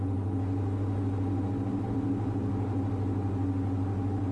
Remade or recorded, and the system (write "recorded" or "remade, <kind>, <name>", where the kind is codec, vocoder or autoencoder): recorded